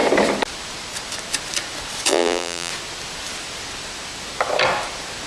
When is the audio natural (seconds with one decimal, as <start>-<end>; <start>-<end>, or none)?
0.0-2.1; 2.7-5.3